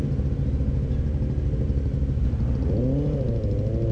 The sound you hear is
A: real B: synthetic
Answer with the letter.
A